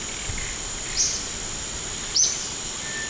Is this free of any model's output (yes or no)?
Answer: yes